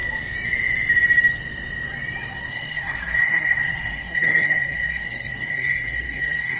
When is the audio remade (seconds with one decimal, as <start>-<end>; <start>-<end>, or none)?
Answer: 2.5-6.6